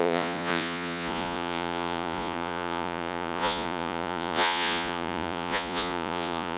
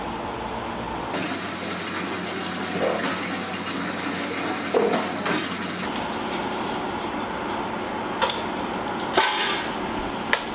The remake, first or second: first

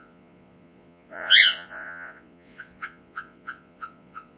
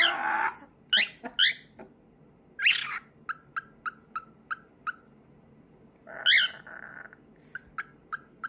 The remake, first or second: first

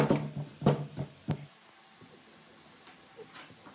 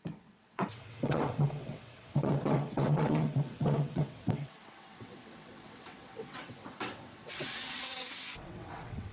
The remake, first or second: second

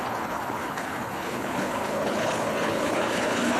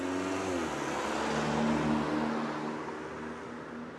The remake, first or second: first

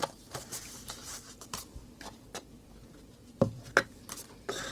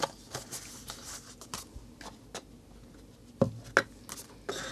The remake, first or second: first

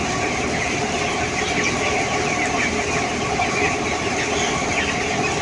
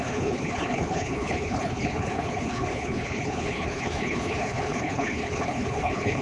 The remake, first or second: second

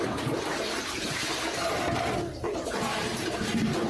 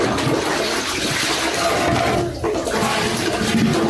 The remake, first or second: first